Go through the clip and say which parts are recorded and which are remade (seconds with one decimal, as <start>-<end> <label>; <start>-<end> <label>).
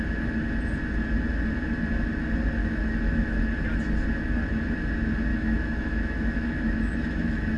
0.0-2.6 recorded; 2.6-3.4 remade; 3.4-5.3 recorded; 5.3-7.6 remade